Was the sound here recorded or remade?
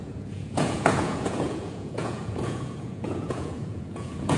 remade